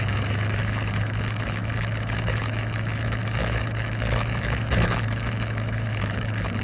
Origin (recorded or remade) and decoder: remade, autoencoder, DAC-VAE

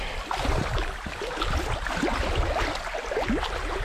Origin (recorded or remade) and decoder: recorded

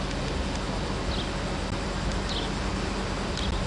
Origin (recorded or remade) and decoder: recorded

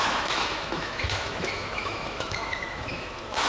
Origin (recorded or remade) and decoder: remade, autoencoder, DAC-VAE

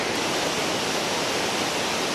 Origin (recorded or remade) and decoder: recorded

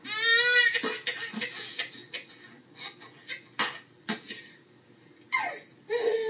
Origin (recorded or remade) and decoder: recorded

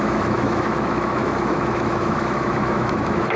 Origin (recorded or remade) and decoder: remade, autoencoder, DAC-VAE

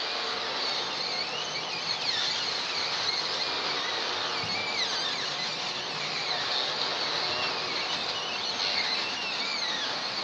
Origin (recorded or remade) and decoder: recorded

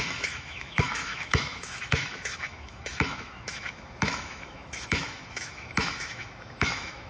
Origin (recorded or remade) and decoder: remade, autoencoder, DAC-VAE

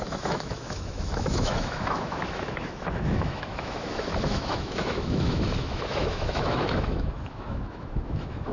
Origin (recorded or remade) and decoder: remade, autoencoder, DAC-VAE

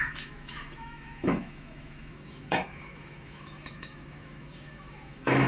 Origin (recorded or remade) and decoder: remade, autoencoder, DAC-VAE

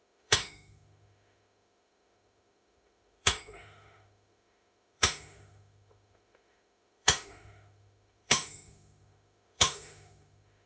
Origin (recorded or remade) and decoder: remade, autoencoder, DAC-VAE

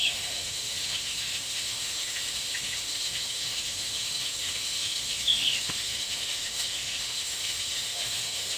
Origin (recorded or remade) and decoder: remade, autoencoder, DAC-VAE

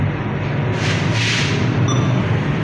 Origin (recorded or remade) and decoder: recorded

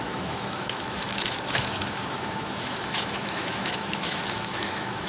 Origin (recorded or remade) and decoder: remade, autoencoder, DAC-VAE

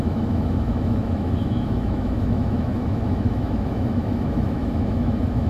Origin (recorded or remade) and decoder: remade, autoencoder, DAC-VAE